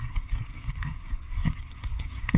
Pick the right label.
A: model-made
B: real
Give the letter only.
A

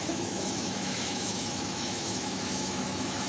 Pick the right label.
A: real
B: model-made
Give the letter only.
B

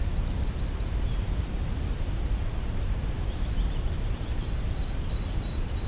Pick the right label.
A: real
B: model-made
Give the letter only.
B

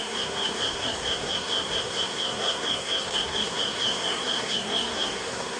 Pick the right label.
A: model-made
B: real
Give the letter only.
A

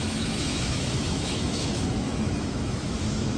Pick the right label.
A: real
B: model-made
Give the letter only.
B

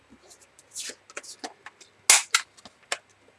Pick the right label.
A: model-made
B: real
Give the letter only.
B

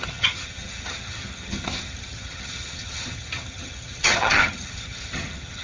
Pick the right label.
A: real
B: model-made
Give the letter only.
B